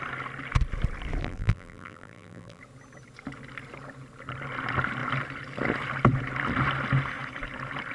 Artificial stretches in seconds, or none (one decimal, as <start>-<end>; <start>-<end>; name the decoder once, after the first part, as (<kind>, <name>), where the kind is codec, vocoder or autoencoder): 1.2-2.6 (vocoder, BigVGAN v2)